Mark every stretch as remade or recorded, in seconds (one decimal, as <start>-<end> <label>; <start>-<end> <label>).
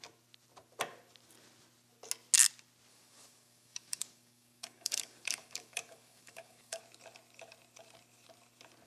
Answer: 0.0-2.9 recorded; 2.9-6.8 remade; 6.8-8.9 recorded